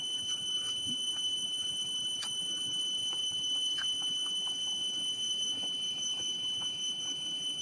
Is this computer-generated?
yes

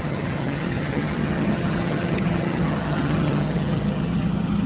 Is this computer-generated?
yes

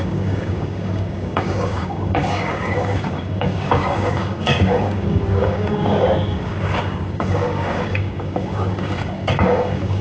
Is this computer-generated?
yes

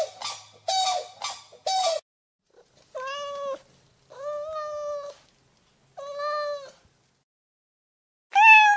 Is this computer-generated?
no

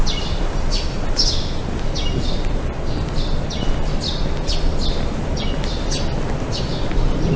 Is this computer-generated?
no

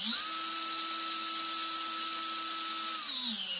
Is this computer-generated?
no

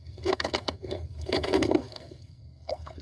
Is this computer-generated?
yes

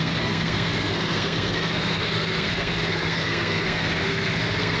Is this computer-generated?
yes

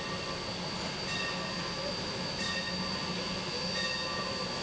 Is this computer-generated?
no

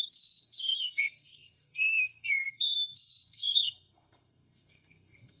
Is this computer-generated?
yes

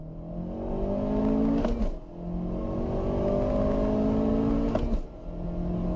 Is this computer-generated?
no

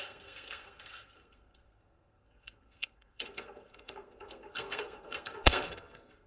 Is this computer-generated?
yes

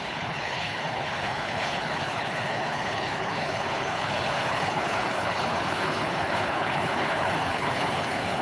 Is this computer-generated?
yes